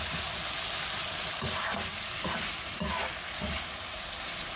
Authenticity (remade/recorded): recorded